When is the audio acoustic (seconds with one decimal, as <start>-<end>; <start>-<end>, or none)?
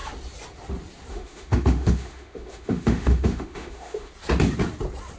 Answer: 0.0-1.1; 4.1-5.2